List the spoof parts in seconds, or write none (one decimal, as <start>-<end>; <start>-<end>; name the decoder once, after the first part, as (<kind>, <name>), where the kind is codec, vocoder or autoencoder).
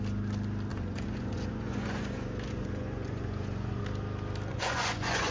0.7-3.8 (vocoder, Vocos); 4.5-5.3